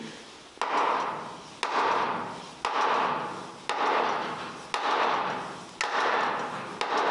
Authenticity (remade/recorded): recorded